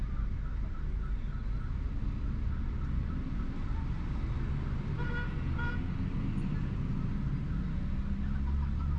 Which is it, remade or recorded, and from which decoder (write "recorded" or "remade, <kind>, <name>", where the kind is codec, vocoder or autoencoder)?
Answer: recorded